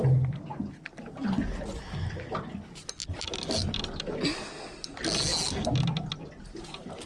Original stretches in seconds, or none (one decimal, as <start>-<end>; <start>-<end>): 0.0-7.1